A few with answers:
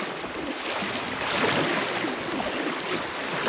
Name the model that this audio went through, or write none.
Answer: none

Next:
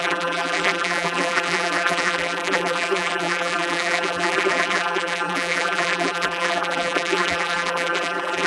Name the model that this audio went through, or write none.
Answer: vocoder, BigVGAN v2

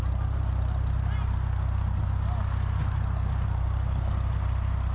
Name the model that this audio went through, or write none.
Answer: none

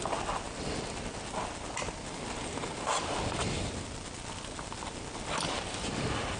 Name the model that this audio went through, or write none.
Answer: none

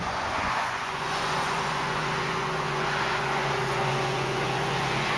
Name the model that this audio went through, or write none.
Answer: vocoder, Vocos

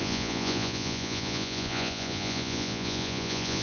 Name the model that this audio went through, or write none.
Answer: vocoder, Vocos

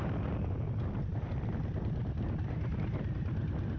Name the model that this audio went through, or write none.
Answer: none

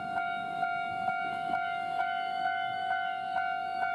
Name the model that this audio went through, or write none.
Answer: autoencoder, DAC-VAE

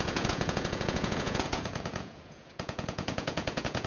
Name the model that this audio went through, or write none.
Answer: vocoder, Vocos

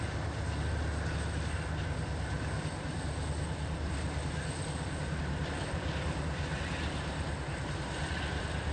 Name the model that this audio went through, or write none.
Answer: none